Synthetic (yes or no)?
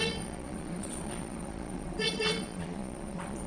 yes